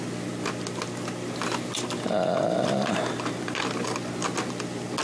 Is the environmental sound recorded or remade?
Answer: recorded